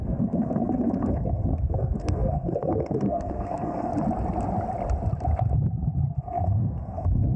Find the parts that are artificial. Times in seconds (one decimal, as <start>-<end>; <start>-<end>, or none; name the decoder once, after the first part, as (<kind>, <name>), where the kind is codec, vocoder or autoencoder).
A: 0.0-3.9 (codec, SNAC); 6.2-7.4

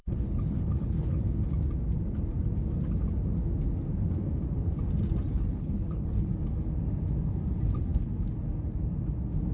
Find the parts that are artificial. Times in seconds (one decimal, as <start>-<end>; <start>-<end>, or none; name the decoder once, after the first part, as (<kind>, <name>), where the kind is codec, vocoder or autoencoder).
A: 0.0-1.2 (codec, HILCodec); 5.3-6.3

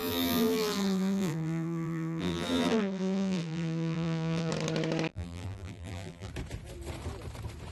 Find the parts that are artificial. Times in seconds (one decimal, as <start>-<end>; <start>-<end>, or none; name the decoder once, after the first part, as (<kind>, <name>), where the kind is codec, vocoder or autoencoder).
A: 0.0-4.5 (vocoder, BigVGAN v2); 5.1-6.3

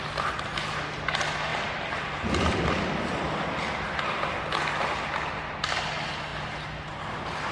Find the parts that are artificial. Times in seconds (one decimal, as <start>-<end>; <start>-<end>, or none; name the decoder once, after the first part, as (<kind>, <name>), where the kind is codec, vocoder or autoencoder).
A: none

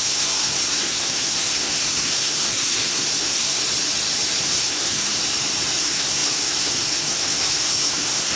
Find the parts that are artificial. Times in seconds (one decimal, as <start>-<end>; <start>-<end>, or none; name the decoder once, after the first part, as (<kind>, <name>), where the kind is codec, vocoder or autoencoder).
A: 0.0-3.6 (codec, SNAC); 4.4-5.2; 5.8-8.4